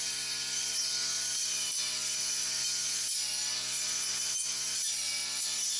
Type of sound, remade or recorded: recorded